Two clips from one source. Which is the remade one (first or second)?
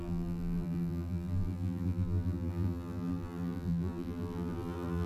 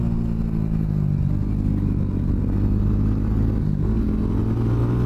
first